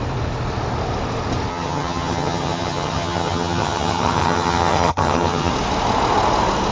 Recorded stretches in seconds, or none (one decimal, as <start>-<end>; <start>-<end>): 0.0-1.5; 5.5-6.7

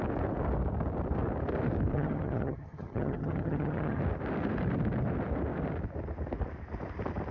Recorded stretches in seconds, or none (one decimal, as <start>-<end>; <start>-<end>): 0.0-1.9; 4.0-7.3

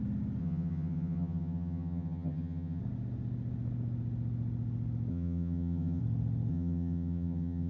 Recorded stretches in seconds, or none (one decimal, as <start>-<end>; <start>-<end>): 0.0-0.4; 2.8-5.1; 6.0-6.5

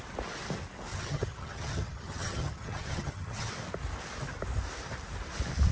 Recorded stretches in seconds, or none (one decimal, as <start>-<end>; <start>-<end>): 0.0-0.9; 3.5-5.7

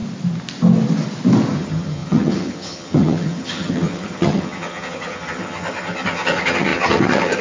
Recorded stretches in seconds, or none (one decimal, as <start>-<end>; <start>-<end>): 0.0-1.5